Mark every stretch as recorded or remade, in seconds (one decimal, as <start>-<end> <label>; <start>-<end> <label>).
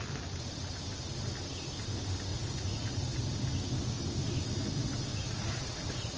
0.0-2.3 recorded; 2.3-3.4 remade; 3.4-5.1 recorded; 5.1-6.2 remade